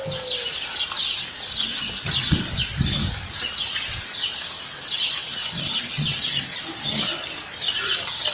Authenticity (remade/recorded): recorded